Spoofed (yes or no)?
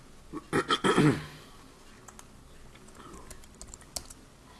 no